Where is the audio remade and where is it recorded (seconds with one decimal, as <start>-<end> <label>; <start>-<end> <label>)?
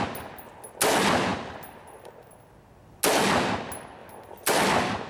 0.0-1.3 recorded; 1.3-2.0 remade; 2.0-4.0 recorded; 4.0-4.5 remade; 4.5-5.1 recorded